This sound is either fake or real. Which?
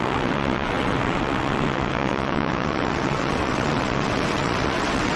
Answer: fake